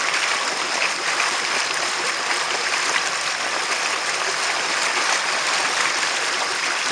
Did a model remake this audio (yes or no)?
no